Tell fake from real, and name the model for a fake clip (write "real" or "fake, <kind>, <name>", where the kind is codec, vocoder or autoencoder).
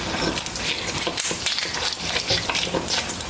real